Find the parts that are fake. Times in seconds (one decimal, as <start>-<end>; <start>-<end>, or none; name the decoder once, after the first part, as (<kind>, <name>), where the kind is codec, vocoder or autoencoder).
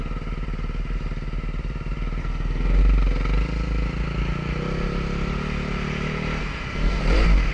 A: 2.2-2.8 (codec, SNAC); 6.4-7.0